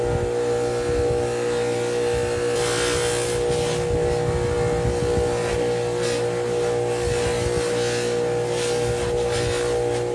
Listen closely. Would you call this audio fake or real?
real